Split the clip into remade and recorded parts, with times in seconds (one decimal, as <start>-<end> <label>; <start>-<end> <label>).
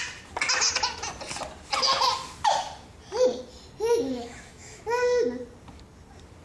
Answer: 0.0-3.9 recorded; 3.9-4.8 remade; 4.8-6.4 recorded